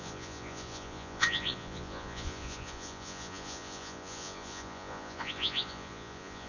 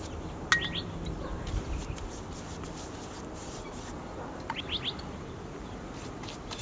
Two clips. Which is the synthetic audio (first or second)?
first